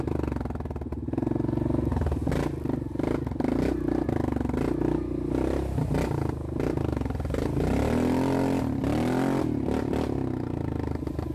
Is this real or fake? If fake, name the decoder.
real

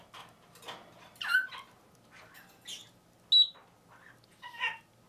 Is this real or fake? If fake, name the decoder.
real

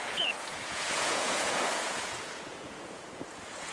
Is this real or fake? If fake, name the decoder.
fake, vocoder, Vocos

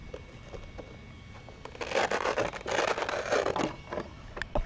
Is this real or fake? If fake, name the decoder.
real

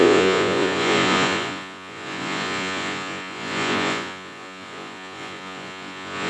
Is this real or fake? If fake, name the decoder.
fake, vocoder, Vocos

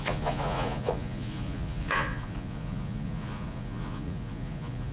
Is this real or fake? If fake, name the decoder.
fake, vocoder, Vocos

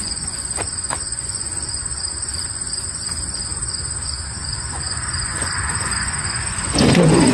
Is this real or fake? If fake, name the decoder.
fake, vocoder, Vocos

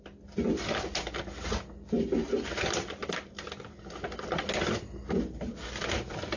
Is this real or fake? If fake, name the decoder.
real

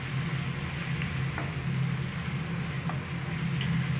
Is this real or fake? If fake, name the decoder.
real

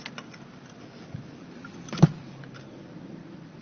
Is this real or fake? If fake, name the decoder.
real